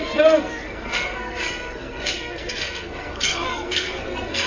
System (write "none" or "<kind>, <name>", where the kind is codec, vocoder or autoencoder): codec, SNAC